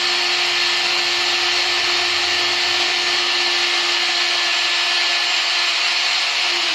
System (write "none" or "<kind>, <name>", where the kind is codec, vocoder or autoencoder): none